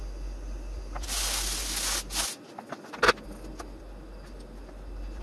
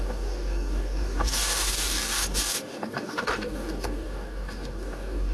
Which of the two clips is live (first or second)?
first